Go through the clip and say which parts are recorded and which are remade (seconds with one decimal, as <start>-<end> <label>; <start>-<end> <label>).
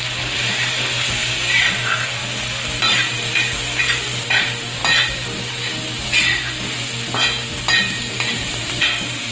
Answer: 0.0-2.2 remade; 2.2-2.8 recorded; 2.8-4.8 remade; 4.8-7.8 recorded; 7.8-9.3 remade